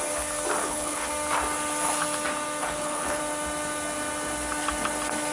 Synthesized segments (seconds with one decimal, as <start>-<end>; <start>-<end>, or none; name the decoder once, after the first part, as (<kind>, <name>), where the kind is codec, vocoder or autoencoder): 0.6-1.1 (codec, HILCodec); 2.6-3.2